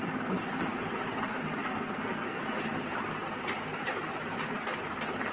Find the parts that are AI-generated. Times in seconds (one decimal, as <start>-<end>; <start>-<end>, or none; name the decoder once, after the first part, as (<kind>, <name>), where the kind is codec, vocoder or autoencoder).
1.6-2.4 (codec, SNAC)